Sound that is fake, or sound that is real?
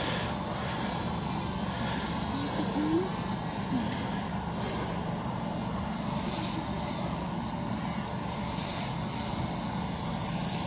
real